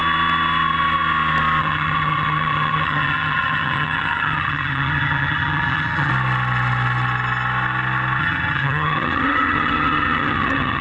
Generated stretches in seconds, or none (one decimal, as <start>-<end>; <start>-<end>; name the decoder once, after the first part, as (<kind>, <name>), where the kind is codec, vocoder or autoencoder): 1.6-6.1 (vocoder, HiFi-GAN); 8.2-10.8